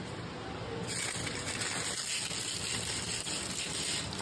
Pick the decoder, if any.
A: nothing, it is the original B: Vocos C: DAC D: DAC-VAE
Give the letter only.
A